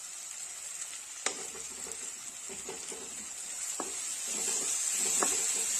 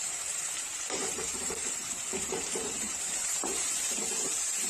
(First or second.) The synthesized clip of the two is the second